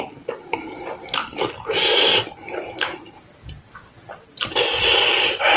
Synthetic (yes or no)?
no